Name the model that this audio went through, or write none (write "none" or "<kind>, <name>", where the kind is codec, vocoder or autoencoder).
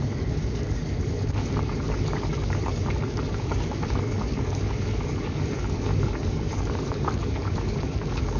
codec, DAC